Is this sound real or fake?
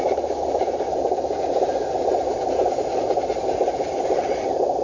real